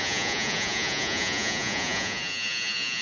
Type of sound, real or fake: fake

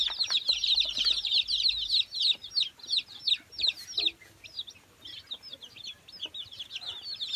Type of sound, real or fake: real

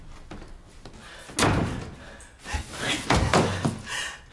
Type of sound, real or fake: real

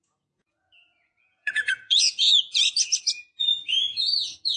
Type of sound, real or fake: fake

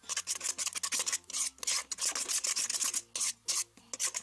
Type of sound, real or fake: real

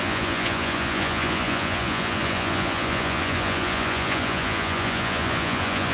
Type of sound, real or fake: fake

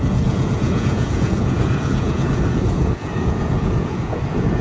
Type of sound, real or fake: fake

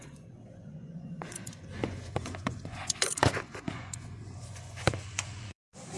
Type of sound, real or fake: fake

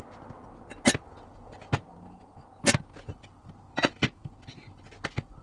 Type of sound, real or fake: real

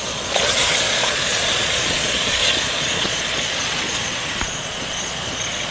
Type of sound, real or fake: fake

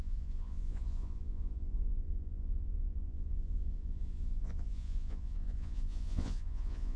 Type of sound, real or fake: fake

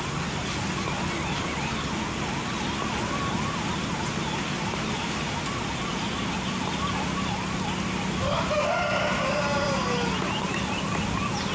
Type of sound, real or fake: real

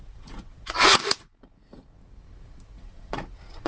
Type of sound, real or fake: fake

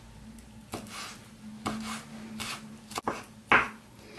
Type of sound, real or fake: real